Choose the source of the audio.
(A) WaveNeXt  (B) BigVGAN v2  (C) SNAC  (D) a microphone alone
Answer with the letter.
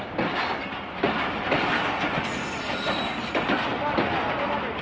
D